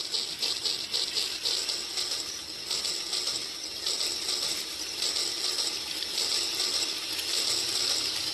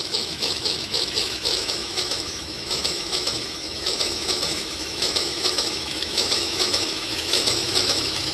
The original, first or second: first